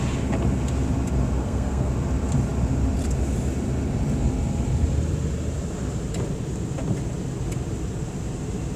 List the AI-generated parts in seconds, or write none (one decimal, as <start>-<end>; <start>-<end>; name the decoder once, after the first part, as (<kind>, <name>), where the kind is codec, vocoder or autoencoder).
1.4-1.9 (codec, SNAC)